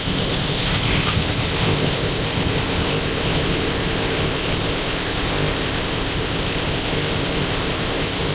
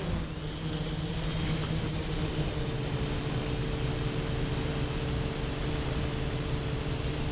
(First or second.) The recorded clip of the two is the second